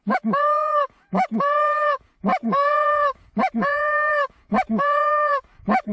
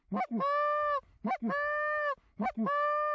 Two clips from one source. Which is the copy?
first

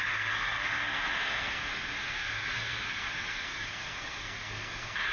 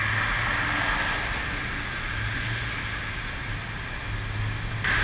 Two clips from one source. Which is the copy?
first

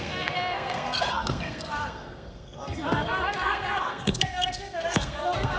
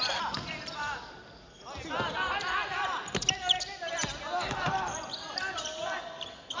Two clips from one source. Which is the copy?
first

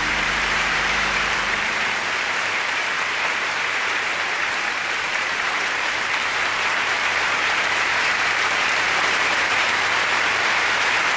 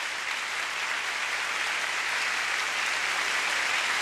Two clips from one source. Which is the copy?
first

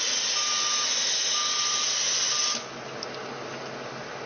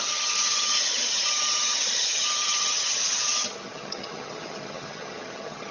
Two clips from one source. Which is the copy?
second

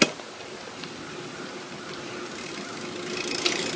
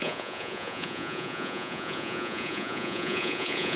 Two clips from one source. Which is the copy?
second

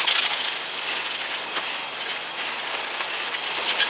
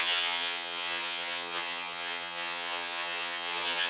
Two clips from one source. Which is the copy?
second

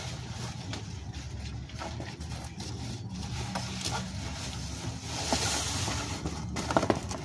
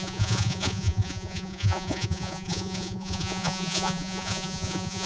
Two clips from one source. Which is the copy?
second